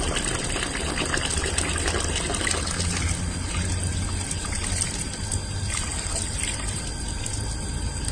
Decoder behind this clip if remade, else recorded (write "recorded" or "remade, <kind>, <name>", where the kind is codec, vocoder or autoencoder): recorded